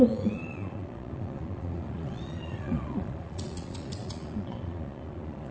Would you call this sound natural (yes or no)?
no